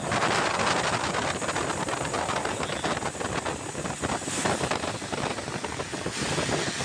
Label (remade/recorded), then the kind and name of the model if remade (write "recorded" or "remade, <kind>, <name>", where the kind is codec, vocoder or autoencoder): recorded